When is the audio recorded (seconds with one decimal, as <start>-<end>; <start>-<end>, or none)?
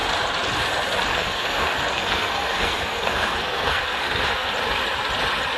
0.0-1.1; 4.5-5.6